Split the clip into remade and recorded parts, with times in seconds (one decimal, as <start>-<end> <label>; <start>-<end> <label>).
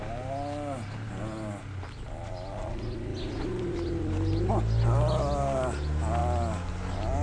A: 0.0-3.1 recorded; 3.1-4.5 remade; 4.5-7.2 recorded